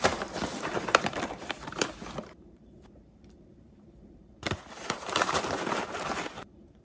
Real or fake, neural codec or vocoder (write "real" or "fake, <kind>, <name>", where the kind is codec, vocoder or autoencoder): fake, vocoder, BigVGAN v2